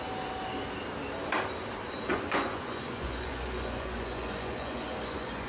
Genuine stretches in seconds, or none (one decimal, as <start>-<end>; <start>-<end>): 0.0-2.1